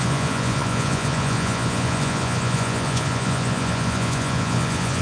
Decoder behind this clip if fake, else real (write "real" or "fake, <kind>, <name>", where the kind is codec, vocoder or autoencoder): fake, vocoder, Vocos